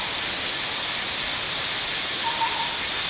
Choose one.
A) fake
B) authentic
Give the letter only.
B